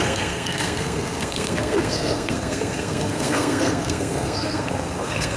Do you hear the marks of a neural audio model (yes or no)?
yes